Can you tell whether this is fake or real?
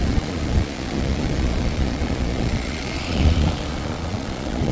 fake